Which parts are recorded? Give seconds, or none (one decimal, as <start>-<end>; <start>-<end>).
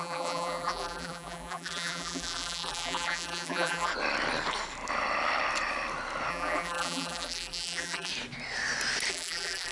3.9-6.3; 8.1-9.1